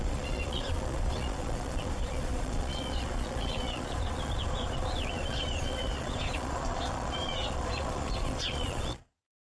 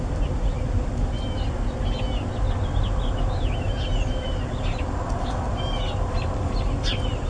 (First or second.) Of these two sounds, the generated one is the first